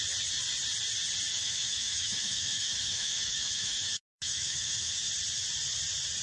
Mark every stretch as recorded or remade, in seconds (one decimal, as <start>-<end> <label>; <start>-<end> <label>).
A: 0.0-1.3 recorded; 1.3-5.0 remade; 5.0-6.2 recorded